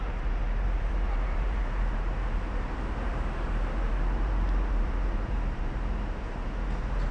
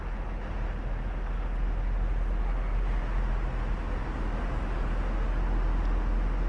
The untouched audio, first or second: second